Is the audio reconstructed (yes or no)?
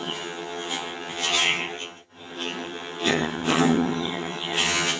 yes